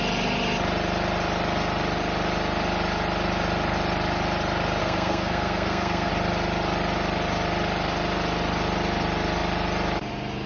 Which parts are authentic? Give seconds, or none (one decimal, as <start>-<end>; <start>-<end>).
0.0-4.8; 6.1-10.5